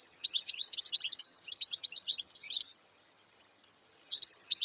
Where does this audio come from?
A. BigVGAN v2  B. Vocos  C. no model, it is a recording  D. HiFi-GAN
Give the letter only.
D